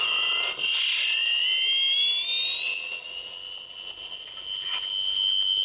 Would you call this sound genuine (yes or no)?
yes